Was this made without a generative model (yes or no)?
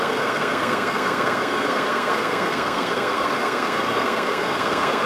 no